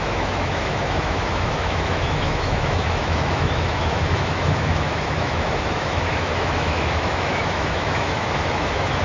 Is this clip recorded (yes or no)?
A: no